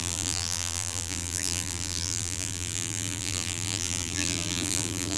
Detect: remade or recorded remade